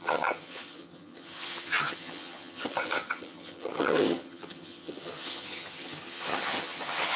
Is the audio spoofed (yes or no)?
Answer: yes